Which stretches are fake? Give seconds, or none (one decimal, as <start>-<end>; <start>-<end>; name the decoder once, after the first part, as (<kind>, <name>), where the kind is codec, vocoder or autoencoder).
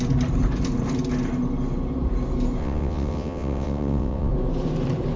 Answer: 2.6-4.3 (vocoder, WaveNeXt)